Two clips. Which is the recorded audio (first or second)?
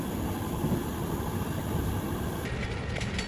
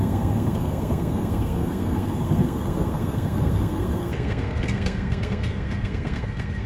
first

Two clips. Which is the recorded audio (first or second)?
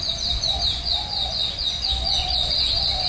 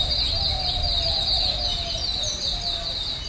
second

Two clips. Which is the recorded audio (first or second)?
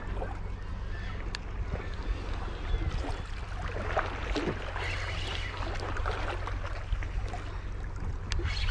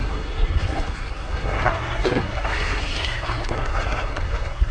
first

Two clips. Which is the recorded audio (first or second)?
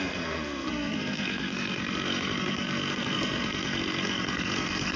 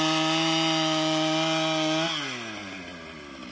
second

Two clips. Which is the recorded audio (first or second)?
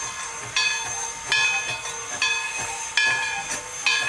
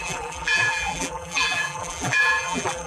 first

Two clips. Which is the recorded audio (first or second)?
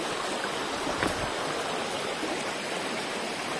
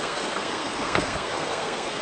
first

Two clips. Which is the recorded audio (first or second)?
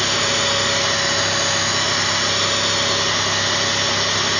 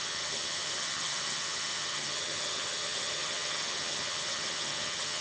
first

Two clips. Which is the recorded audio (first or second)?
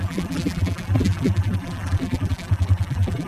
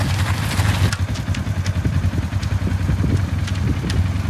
second